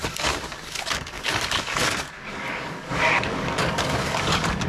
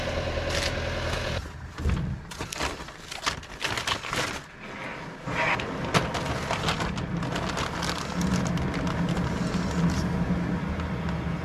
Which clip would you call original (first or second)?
second